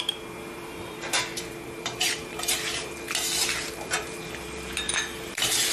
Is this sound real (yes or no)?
no